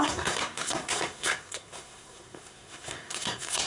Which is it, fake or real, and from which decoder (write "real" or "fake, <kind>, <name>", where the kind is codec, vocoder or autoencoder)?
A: fake, codec, SNAC